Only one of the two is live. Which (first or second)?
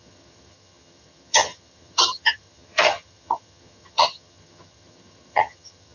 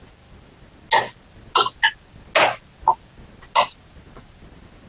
second